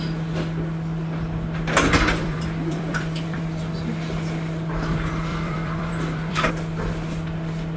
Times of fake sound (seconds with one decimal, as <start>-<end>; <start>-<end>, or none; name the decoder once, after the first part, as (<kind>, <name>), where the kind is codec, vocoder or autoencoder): 2.1-3.4 (vocoder, BigVGAN v2); 5.3-6.5